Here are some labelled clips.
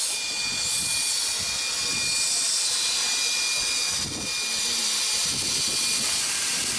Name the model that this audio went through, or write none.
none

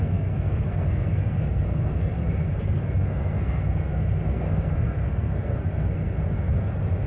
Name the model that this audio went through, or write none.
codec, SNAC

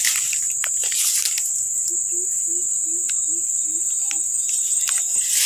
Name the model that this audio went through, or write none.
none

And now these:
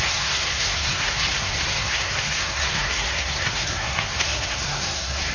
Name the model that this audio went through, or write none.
codec, SNAC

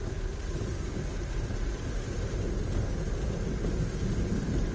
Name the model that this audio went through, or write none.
none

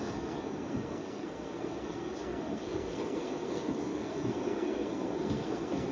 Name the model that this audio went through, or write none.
codec, SNAC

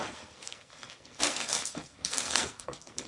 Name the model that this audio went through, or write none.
codec, SNAC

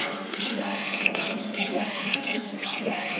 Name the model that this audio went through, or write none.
codec, SNAC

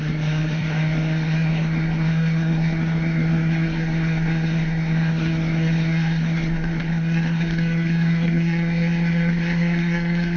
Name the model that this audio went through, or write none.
codec, SNAC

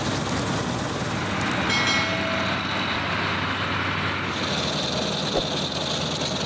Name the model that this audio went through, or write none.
none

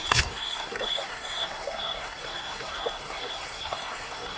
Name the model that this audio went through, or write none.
codec, SNAC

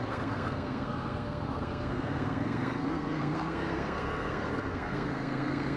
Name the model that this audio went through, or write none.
codec, SNAC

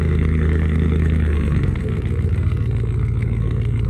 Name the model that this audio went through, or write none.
codec, SNAC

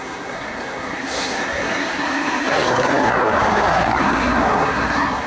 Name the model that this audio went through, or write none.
codec, SNAC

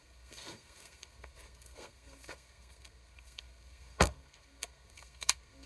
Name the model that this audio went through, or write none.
codec, SNAC